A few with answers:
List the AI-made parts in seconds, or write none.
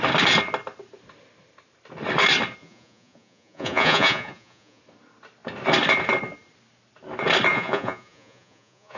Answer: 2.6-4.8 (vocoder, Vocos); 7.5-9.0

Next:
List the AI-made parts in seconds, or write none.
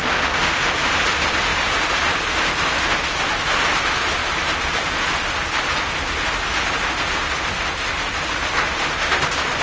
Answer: 1.5-3.0 (vocoder, BigVGAN v2); 4.2-8.9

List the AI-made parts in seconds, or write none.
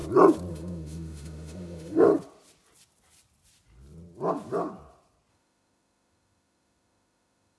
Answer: 0.5-2.1 (autoencoder, DAC-VAE); 5.3-7.6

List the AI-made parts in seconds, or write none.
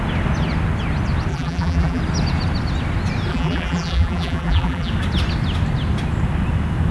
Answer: 1.3-2.0 (vocoder, BigVGAN v2); 3.3-4.9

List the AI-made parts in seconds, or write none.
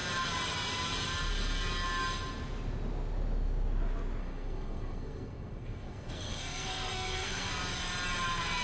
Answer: 4.2-7.5 (codec, SNAC)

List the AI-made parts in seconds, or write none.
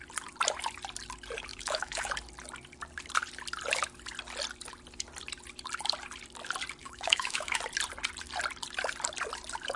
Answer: 1.5-2.1 (autoencoder, DAC-VAE); 6.8-7.6